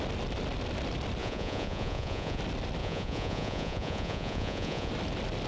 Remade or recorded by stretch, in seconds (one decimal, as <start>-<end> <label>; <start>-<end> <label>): 0.0-1.2 recorded; 1.2-2.4 remade; 2.4-2.8 recorded; 2.8-4.9 remade; 4.9-5.5 recorded